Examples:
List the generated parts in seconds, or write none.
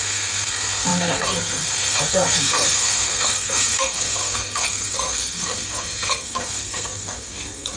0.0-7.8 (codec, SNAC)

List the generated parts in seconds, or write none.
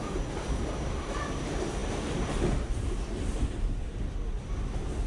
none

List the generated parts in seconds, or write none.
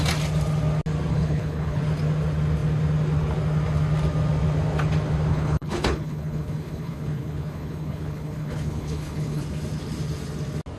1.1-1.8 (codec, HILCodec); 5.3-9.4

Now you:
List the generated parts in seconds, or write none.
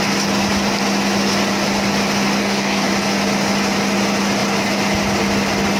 2.4-2.9 (codec, DAC)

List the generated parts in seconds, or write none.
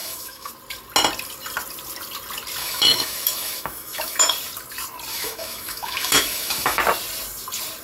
0.0-0.5 (autoencoder, DAC-VAE); 2.6-4.3; 5.1-6.8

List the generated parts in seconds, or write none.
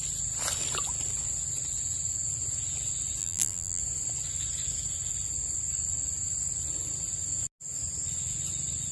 3.2-3.8 (vocoder, BigVGAN v2)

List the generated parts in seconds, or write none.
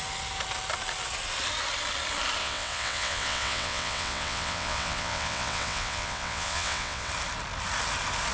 2.4-7.1 (vocoder, WaveNeXt)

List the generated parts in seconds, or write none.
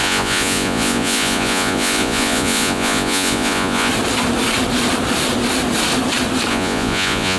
0.0-3.9 (vocoder, Vocos); 6.5-7.4